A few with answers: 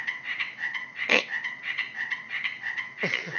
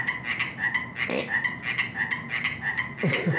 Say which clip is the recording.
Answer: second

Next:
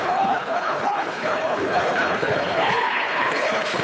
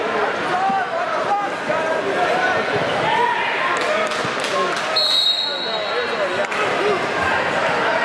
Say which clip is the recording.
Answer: second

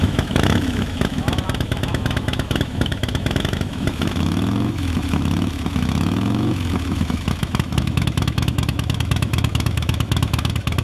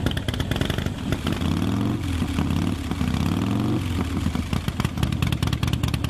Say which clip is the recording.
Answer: second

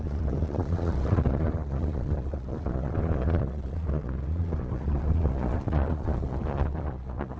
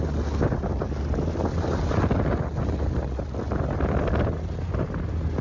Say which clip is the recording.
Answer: second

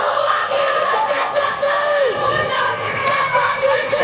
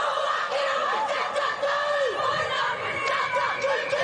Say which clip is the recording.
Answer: second